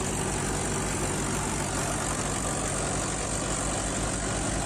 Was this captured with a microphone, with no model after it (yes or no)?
yes